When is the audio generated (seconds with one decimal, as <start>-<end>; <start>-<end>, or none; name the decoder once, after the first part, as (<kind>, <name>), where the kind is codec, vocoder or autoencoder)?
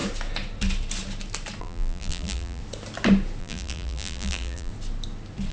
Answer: 1.6-2.6 (vocoder, BigVGAN v2); 3.4-4.7